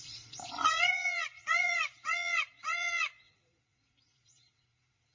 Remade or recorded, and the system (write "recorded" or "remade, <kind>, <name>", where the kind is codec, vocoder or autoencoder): remade, vocoder, Vocos